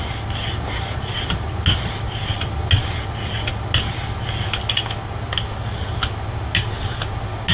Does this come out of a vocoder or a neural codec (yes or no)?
no